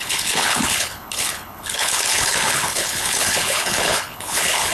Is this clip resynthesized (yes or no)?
yes